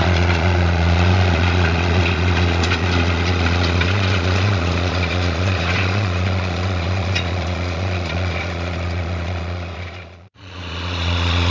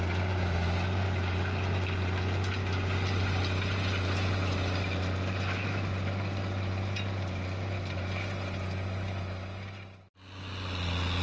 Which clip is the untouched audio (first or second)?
second